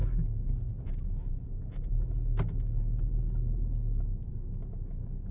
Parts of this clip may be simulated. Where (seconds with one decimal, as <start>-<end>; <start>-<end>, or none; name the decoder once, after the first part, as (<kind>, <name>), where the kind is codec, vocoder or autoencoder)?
none